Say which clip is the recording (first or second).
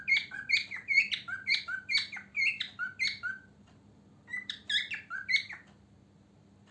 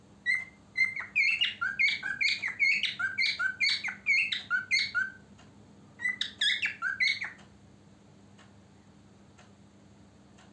second